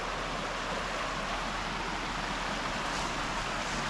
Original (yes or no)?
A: yes